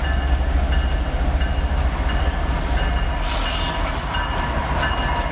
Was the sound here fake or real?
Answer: real